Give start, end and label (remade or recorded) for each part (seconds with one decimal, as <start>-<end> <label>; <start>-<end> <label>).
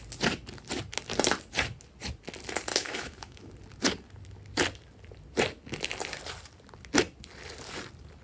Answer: 0.0-2.7 recorded; 2.7-3.5 remade; 3.5-8.2 recorded